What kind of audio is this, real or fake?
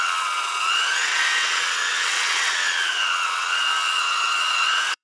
fake